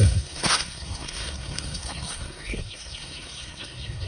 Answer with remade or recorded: remade